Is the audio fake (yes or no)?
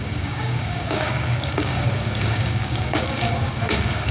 yes